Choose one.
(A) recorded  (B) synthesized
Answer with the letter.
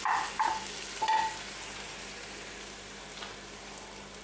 A